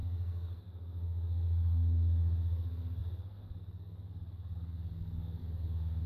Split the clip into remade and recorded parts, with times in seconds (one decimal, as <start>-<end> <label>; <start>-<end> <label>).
0.0-6.1 remade